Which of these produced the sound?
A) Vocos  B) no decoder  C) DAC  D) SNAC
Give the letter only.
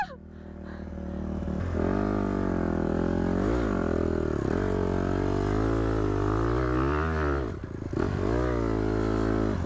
B